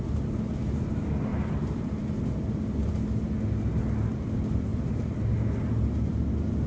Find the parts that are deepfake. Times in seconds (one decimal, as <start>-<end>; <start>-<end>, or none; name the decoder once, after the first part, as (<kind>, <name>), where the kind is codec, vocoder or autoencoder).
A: 1.3-2.2 (vocoder, BigVGAN v2); 4.7-5.2